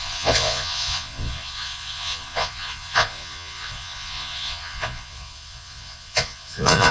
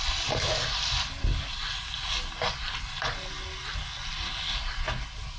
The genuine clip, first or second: second